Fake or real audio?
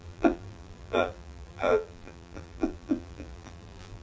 fake